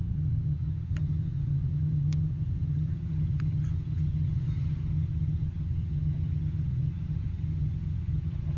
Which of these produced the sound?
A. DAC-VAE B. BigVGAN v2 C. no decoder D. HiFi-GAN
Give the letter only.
D